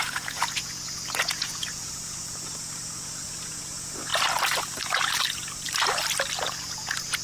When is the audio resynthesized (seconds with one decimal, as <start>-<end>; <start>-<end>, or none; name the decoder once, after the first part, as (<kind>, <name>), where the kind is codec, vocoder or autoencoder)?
0.0-4.1 (vocoder, Vocos); 6.5-7.2